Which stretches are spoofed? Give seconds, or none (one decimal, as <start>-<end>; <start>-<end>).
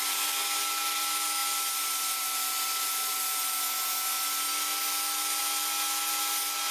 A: none